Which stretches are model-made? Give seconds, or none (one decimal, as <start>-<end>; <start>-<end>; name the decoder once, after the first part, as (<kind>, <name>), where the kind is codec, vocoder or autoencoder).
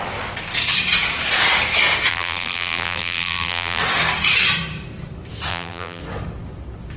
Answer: 2.1-3.8 (vocoder, BigVGAN v2); 5.5-6.0